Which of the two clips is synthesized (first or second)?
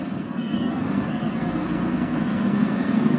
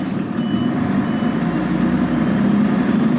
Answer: first